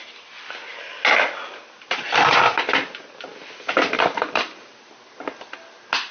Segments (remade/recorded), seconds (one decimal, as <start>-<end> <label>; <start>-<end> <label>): 0.0-6.1 recorded